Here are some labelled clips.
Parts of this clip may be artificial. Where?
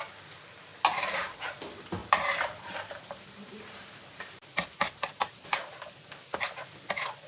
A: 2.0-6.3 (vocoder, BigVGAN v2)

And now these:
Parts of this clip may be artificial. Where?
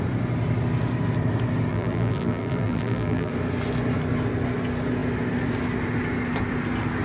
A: 1.7-3.3 (vocoder, BigVGAN v2)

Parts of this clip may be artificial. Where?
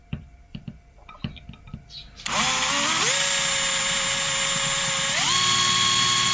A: none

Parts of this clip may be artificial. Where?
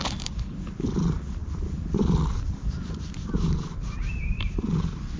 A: none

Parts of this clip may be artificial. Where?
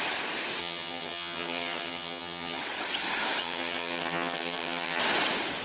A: 0.6-2.6 (vocoder, HiFi-GAN); 3.4-5.0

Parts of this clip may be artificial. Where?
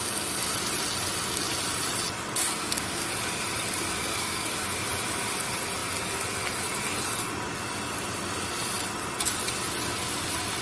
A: 2.4-3.1 (codec, SNAC); 4.0-4.5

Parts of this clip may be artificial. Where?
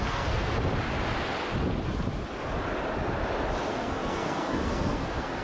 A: 0.0-0.5 (codec, SNAC); 3.7-5.4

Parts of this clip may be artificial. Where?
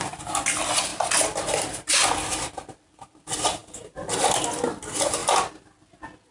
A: none